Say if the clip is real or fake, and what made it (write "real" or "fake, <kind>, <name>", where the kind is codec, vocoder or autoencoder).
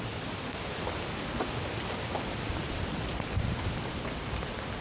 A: fake, vocoder, BigVGAN v2